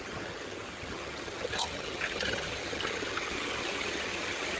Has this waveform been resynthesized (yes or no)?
yes